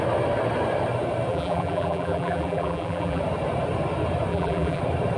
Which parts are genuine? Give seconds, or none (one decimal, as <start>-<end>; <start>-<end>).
0.0-1.3; 3.2-4.3; 4.8-5.2